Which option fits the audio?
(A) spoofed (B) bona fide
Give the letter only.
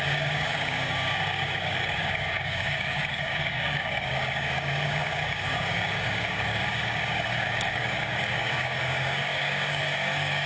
A